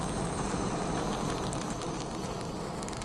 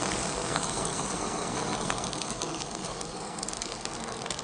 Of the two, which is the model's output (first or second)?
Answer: second